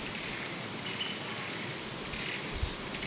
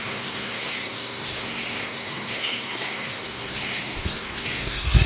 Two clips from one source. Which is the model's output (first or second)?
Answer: second